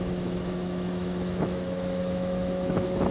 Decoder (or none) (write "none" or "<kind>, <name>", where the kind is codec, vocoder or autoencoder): autoencoder, DAC-VAE